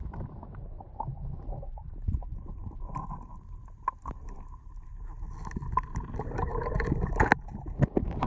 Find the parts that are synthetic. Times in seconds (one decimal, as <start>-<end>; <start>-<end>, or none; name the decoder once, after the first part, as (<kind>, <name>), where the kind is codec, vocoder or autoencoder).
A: none